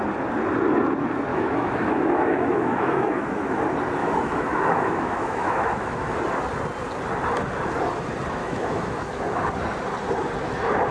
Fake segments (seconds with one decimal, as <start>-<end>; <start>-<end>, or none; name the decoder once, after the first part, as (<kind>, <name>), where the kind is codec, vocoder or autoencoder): 1.3-3.6 (autoencoder, DAC-VAE); 4.0-6.1; 8.4-9.2